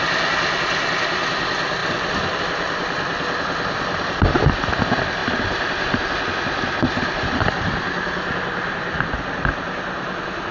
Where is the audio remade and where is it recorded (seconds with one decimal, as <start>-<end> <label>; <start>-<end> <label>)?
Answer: 0.0-1.8 recorded; 1.8-2.4 remade; 2.4-10.5 recorded